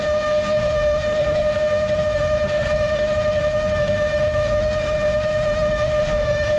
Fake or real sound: fake